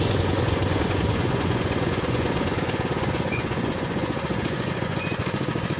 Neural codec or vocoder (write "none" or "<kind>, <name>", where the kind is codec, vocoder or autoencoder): vocoder, Vocos